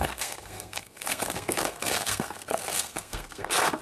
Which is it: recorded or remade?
remade